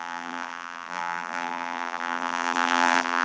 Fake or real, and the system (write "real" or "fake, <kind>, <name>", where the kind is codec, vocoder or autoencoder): fake, vocoder, BigVGAN v2